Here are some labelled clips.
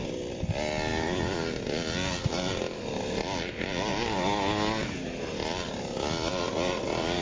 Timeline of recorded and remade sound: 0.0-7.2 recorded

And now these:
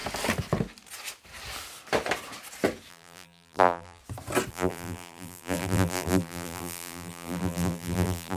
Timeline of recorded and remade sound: 0.0-2.9 recorded; 2.9-4.0 remade; 4.0-4.5 recorded; 4.5-8.4 remade

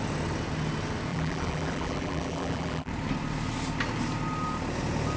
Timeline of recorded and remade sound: 0.0-1.1 recorded; 1.1-2.9 remade; 2.9-5.2 recorded

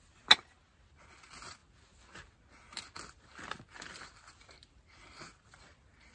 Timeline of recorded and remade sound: 0.0-6.1 recorded

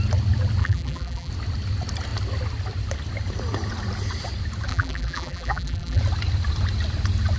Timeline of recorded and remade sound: 0.0-0.6 recorded; 0.6-1.3 remade; 1.3-4.7 recorded; 4.7-6.0 remade; 6.0-7.4 recorded

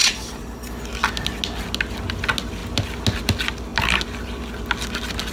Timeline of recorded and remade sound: 0.0-0.7 remade; 0.7-5.3 recorded